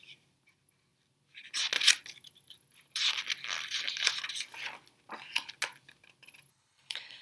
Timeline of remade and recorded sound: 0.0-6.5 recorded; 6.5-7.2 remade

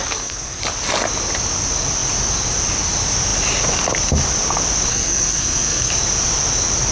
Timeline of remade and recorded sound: 0.0-0.6 remade; 0.6-4.9 recorded; 4.9-5.9 remade; 5.9-6.9 recorded

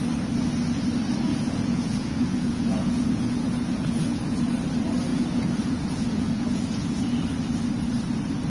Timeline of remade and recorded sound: 0.0-1.3 recorded; 1.3-4.4 remade; 4.4-5.1 recorded; 5.1-7.0 remade; 7.0-8.5 recorded

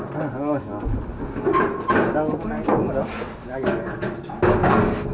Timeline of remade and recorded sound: 0.0-5.1 recorded

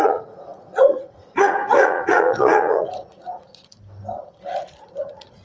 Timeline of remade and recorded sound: 0.0-3.7 remade; 3.7-4.9 recorded; 4.9-5.4 remade

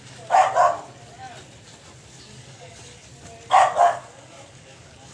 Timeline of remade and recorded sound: 0.0-0.4 remade; 0.4-2.2 recorded; 2.2-3.1 remade; 3.1-3.8 recorded; 3.8-5.1 remade